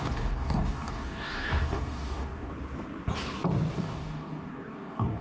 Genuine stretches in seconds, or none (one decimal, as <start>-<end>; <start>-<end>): 2.5-3.7